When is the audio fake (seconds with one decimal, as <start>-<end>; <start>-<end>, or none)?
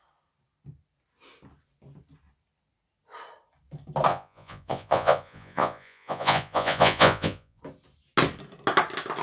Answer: 4.1-7.6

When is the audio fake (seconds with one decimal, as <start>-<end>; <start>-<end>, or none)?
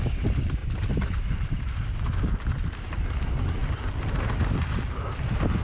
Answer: none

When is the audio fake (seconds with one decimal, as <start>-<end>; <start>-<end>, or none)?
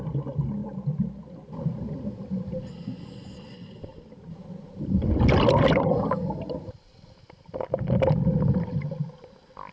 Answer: none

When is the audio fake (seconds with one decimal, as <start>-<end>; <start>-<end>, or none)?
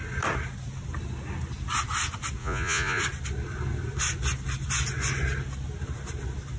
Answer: 2.4-3.0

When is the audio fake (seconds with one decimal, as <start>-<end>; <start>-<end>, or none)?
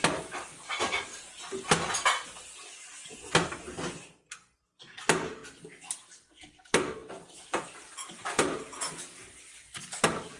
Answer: none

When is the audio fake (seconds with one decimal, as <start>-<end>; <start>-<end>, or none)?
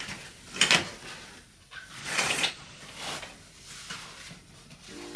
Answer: 2.0-2.8